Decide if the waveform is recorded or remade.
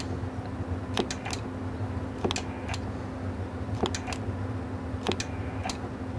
recorded